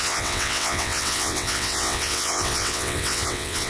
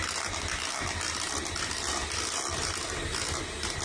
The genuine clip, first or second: second